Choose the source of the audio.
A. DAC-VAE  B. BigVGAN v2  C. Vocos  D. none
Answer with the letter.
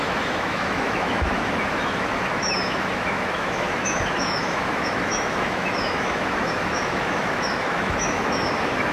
A